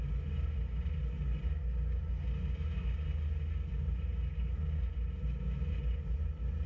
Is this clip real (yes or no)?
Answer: yes